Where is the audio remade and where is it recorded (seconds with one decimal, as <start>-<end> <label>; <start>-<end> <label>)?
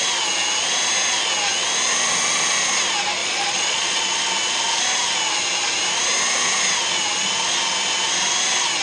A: 0.0-3.2 recorded; 3.2-4.2 remade; 4.2-8.8 recorded